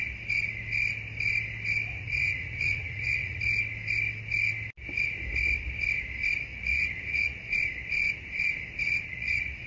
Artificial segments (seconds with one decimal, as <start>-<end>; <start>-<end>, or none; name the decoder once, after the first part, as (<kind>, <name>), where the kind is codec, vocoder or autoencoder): 1.9-3.4 (vocoder, Vocos); 6.5-7.4; 9.0-9.7